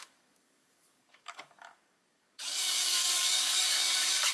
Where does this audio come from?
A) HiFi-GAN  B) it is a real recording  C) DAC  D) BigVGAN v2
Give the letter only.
C